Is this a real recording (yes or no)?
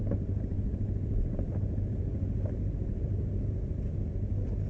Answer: yes